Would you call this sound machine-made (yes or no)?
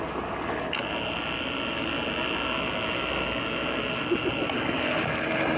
no